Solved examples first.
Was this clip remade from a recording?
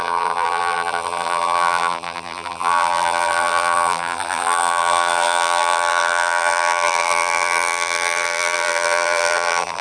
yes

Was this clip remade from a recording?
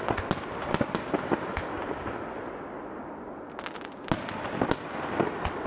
no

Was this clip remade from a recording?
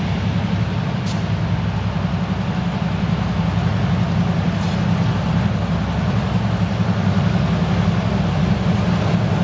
no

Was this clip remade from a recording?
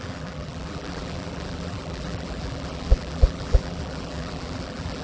yes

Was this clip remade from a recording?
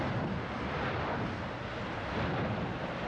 no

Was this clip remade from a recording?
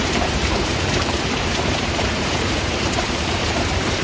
yes